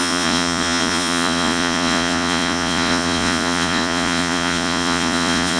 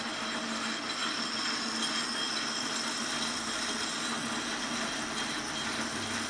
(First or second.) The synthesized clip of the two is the first